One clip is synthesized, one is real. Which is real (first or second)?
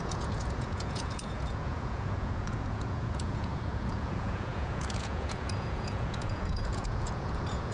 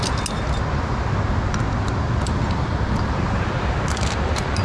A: second